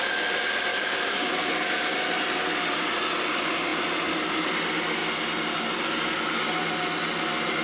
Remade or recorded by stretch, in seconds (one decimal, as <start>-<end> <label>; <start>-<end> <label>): 0.0-0.7 recorded; 0.7-1.3 remade; 1.3-7.6 recorded